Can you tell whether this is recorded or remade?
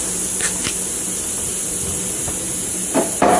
recorded